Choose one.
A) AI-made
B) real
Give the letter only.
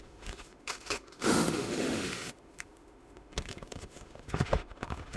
A